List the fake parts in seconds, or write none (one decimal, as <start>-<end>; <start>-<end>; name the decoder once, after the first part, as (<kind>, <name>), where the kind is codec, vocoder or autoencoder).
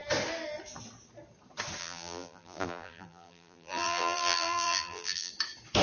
1.8-5.3 (vocoder, BigVGAN v2)